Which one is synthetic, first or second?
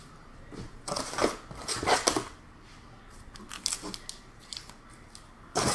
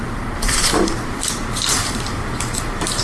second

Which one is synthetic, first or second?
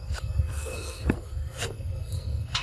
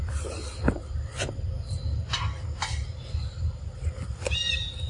first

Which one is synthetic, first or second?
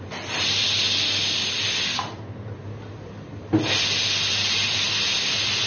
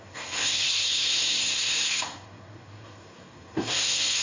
second